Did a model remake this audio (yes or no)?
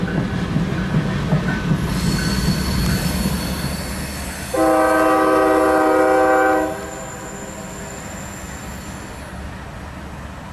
no